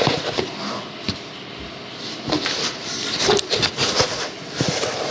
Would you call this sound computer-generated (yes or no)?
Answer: no